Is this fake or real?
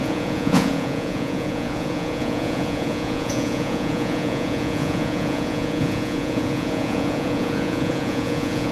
fake